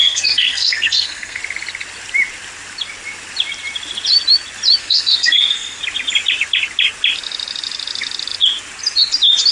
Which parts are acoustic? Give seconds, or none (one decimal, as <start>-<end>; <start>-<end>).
1.4-4.8; 5.8-9.5